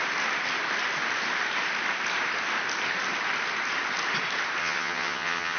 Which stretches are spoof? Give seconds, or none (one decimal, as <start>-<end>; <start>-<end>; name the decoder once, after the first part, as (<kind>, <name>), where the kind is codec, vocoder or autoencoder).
4.6-5.6 (vocoder, HiFi-GAN)